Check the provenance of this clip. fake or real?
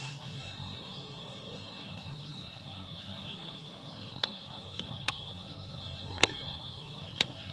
fake